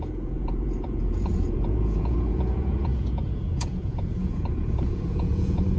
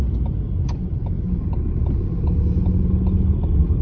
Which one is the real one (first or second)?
second